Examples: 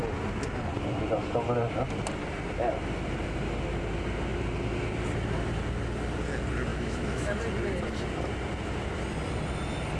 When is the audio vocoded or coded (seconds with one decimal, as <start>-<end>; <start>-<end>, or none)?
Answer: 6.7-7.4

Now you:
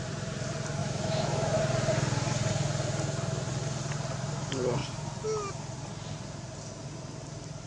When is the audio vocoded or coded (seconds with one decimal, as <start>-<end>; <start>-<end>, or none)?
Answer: 0.8-1.6

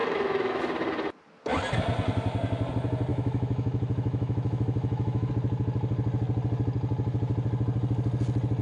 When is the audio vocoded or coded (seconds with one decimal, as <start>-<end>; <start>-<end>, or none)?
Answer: 0.0-0.6; 3.1-5.3

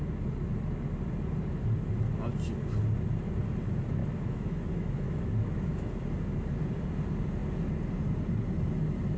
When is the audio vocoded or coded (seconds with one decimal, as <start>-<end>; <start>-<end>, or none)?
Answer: 4.0-5.9

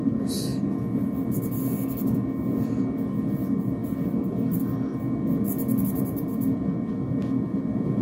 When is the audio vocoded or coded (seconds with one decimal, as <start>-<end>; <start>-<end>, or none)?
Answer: none

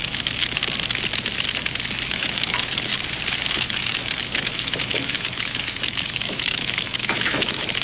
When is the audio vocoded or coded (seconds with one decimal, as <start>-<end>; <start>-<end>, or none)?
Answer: 0.0-0.6; 2.1-2.9; 3.5-7.8